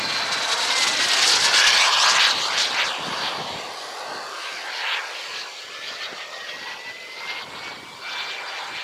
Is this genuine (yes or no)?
yes